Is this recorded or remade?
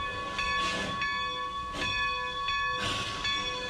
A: recorded